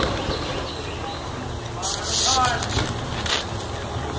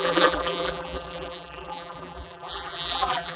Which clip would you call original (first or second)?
first